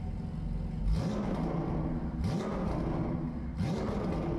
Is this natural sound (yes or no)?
yes